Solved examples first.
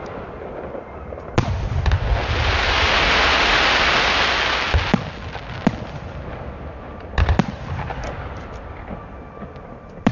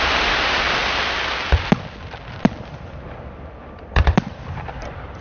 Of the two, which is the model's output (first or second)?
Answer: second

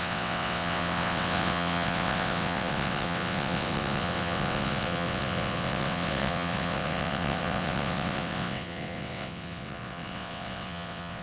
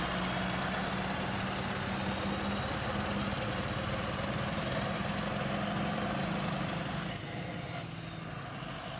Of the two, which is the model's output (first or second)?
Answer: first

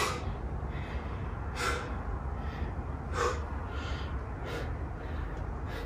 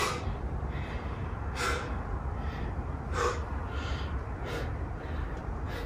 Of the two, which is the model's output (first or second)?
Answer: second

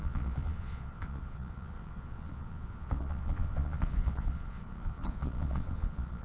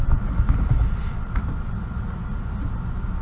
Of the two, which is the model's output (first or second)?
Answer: first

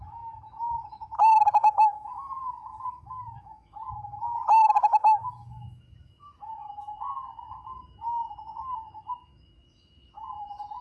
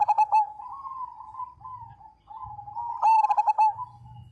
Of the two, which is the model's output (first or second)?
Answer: first